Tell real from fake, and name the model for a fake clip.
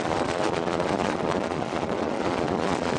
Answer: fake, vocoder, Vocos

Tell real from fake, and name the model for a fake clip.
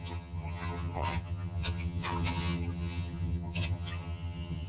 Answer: fake, vocoder, HiFi-GAN